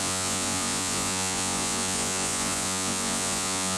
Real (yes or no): no